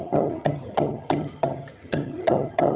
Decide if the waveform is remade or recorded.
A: remade